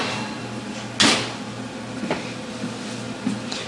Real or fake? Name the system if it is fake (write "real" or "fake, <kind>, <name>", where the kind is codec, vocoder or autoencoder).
real